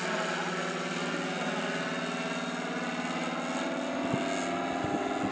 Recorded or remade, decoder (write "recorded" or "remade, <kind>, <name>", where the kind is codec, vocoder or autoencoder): recorded